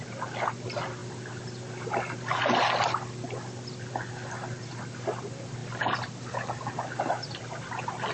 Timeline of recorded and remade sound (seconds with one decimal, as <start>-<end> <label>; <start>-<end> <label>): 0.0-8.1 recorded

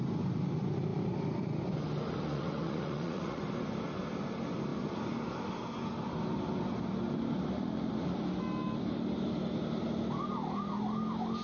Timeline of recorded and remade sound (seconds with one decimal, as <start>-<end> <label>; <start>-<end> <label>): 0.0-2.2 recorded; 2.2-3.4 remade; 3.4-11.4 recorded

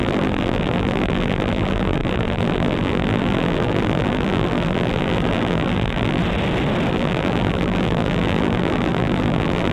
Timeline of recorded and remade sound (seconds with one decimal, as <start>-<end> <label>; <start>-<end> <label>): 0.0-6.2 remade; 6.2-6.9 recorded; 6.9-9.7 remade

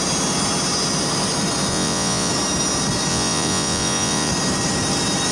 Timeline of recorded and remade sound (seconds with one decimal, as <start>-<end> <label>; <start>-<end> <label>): 0.0-1.7 recorded; 1.7-2.3 remade; 2.3-3.1 recorded; 3.1-4.3 remade; 4.3-5.3 recorded

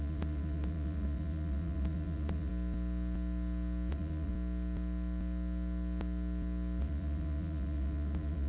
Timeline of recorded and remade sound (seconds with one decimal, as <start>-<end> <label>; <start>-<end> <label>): 0.0-2.5 remade; 2.5-3.9 recorded; 3.9-4.3 remade; 4.3-6.8 recorded; 6.8-8.5 remade